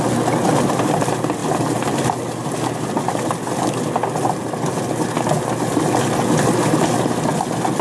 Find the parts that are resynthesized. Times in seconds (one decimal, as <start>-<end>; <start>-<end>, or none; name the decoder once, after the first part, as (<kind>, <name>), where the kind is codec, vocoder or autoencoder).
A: none